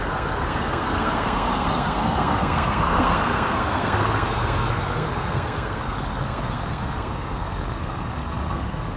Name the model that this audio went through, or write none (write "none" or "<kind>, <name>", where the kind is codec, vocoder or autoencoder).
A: codec, SNAC